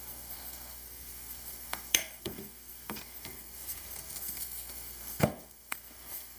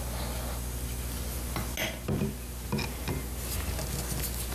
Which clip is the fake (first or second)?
first